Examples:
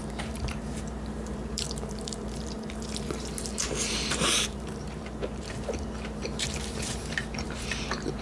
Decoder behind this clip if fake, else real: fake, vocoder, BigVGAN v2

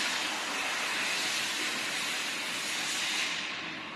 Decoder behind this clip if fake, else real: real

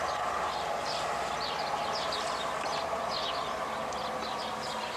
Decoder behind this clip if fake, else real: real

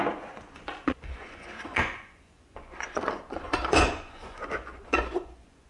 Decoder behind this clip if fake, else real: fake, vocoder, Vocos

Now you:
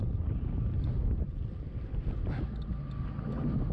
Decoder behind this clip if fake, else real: real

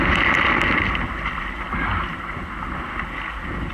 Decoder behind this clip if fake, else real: real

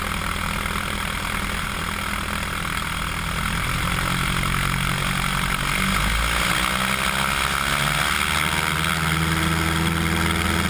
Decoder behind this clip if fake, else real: real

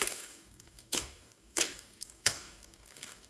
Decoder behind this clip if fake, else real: fake, codec, DAC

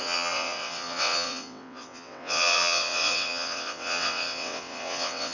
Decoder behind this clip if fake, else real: fake, vocoder, WaveNeXt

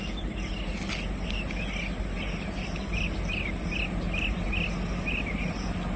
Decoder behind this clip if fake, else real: real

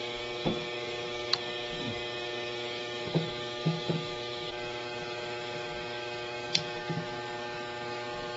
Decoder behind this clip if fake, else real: fake, codec, DAC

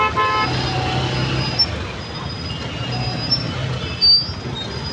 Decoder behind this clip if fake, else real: real